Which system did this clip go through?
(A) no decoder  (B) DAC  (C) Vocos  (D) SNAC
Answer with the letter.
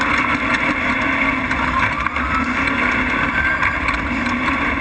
A